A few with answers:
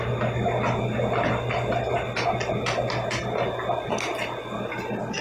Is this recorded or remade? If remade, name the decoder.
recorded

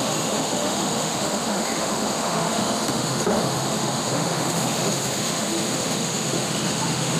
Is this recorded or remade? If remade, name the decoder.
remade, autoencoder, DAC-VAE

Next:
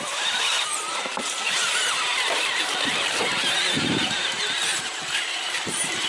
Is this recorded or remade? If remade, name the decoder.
remade, vocoder, BigVGAN v2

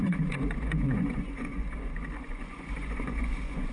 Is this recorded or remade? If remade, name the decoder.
remade, vocoder, Vocos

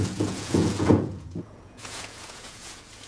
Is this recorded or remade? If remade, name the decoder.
remade, vocoder, Vocos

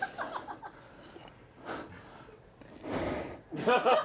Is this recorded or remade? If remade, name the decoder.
recorded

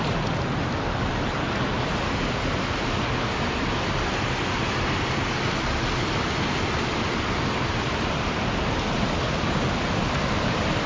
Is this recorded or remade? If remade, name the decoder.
recorded